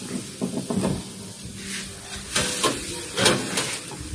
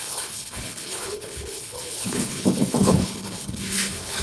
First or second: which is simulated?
second